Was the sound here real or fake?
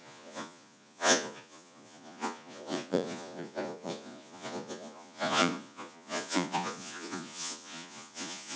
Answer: fake